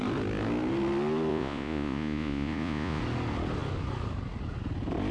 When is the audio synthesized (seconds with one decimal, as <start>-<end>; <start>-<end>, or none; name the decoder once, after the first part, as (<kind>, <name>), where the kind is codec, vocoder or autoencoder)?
1.3-3.0 (vocoder, Vocos)